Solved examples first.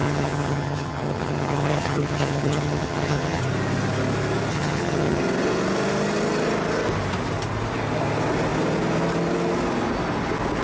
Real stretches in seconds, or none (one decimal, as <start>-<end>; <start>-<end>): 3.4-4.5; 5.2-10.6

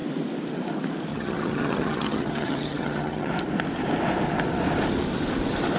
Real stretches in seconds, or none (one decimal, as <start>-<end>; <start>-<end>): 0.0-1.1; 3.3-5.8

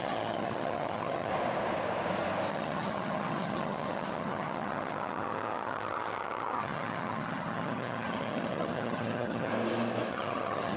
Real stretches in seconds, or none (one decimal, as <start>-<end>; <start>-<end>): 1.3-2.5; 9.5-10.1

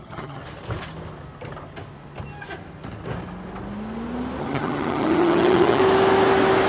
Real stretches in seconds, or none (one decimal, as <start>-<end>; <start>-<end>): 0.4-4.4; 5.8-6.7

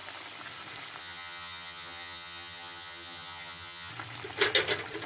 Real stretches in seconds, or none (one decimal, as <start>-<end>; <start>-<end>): 0.0-1.0; 3.9-5.1